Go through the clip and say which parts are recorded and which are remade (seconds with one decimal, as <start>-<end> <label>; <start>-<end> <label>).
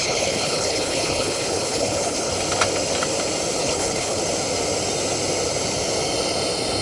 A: 0.0-2.3 remade; 2.3-3.6 recorded; 3.6-4.2 remade; 4.2-6.8 recorded